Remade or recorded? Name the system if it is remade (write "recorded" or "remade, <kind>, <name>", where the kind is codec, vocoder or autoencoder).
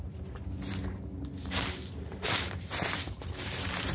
remade, vocoder, BigVGAN v2